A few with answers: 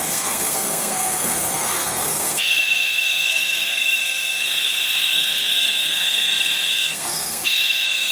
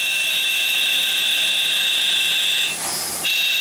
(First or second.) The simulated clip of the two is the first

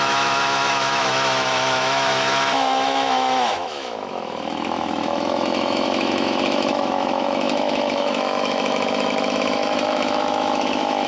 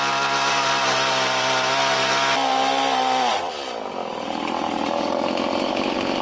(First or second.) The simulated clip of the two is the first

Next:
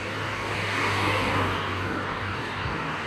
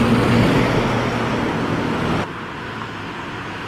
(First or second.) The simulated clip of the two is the first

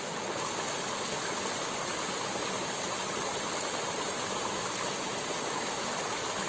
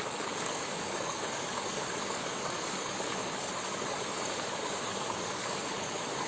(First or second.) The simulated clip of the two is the second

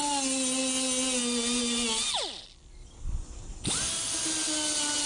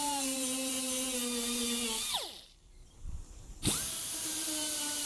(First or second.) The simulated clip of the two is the second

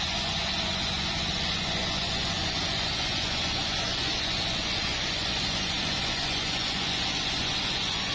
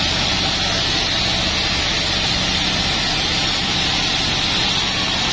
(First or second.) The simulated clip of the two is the first